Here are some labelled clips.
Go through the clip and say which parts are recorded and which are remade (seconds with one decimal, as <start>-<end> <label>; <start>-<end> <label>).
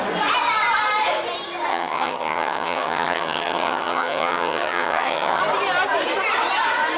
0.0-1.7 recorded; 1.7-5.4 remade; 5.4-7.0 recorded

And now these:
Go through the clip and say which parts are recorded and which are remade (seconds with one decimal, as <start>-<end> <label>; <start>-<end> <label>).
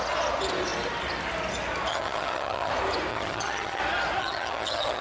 0.0-1.9 recorded; 1.9-2.7 remade; 2.7-3.1 recorded; 3.1-3.8 remade; 3.8-4.2 recorded; 4.2-5.0 remade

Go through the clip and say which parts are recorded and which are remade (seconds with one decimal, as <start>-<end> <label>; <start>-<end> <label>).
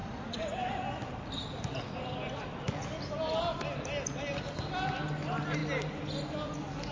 0.0-6.9 recorded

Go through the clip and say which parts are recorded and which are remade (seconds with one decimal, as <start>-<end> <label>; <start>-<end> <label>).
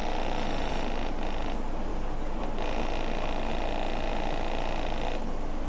0.0-5.7 recorded